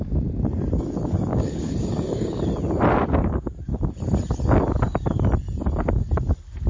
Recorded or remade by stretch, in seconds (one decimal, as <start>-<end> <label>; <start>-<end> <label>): 0.0-1.3 recorded; 1.3-2.4 remade; 2.4-6.7 recorded